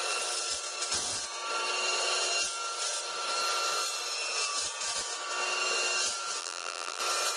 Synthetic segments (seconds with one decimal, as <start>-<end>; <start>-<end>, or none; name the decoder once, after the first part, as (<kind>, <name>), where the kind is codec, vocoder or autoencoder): 6.4-7.0 (vocoder, BigVGAN v2)